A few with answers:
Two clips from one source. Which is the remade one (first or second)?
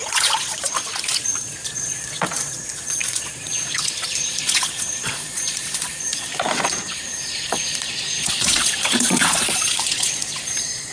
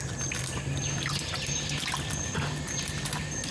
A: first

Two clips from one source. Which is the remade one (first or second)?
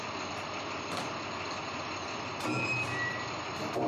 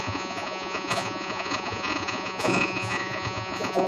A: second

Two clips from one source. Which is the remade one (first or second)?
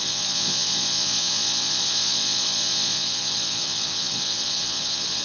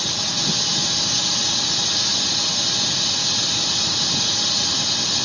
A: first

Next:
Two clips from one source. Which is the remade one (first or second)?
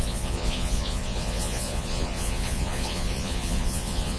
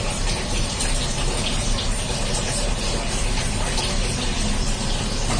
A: first